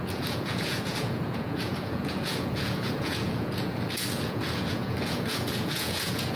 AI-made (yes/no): yes